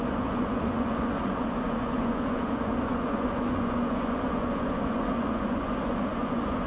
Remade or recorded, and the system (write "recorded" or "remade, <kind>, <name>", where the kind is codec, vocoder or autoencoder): remade, vocoder, Vocos